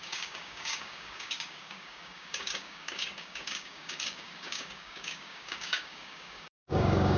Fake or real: fake